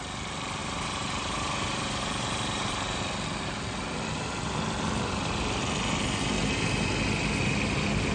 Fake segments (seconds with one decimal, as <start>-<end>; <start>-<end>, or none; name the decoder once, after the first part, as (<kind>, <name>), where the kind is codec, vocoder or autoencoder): 0.6-3.0 (vocoder, BigVGAN v2)

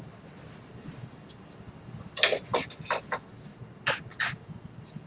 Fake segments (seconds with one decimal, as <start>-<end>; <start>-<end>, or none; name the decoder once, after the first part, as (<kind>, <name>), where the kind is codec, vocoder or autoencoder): none

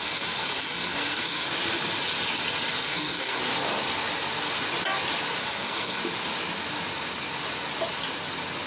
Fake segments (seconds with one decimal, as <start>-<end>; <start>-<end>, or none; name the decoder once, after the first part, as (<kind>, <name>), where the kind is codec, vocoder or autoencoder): 0.0-1.5 (codec, SNAC); 2.8-3.4; 5.4-6.0

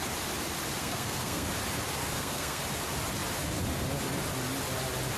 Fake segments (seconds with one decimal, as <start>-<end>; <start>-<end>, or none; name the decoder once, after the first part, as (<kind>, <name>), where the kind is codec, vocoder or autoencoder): 0.8-1.5 (codec, SNAC); 2.0-2.6

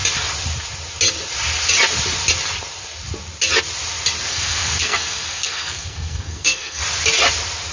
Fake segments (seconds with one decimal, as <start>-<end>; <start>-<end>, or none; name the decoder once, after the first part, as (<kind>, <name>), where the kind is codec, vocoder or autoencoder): 4.3-6.8 (codec, SNAC)

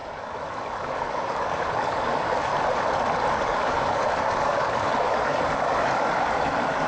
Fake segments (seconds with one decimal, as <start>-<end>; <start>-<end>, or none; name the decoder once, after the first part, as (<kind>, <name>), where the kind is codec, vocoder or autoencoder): 0.0-2.5 (codec, DAC); 3.3-6.9

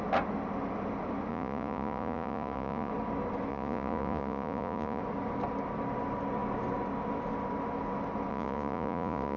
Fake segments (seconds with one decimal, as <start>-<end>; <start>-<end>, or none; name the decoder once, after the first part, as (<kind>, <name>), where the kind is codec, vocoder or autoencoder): 1.3-2.9 (vocoder, Vocos); 3.5-5.0; 8.3-9.4